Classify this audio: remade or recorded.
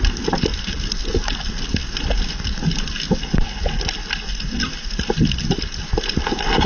recorded